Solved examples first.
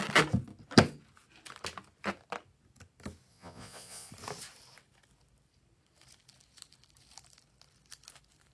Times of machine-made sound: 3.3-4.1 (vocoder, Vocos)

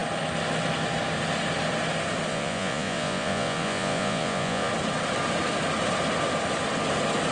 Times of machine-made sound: 2.3-4.7 (vocoder, Vocos)

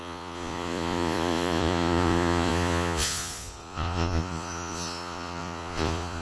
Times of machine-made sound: 0.0-6.2 (vocoder, Vocos)

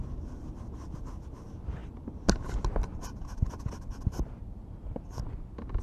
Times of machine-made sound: none

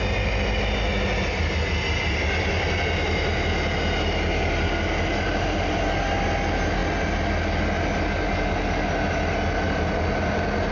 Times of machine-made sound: none

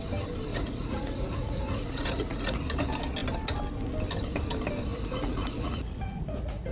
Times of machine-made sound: 0.5-2.6 (vocoder, Vocos); 4.9-6.7